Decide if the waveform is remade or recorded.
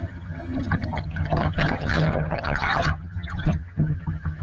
remade